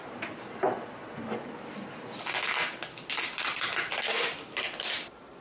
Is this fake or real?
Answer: real